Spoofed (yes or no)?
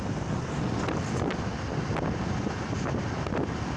no